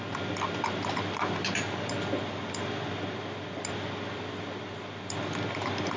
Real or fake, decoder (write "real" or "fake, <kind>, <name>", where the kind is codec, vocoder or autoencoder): real